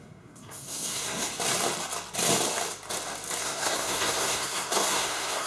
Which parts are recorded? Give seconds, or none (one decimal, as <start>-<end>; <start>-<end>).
1.3-3.4